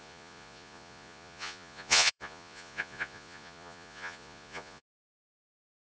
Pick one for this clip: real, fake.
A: fake